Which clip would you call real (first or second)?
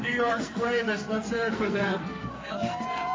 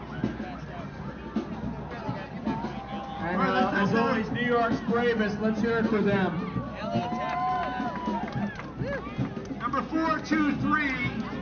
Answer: second